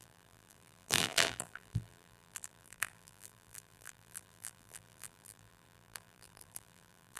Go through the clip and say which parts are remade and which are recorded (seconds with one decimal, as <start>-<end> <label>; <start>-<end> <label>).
0.0-7.2 remade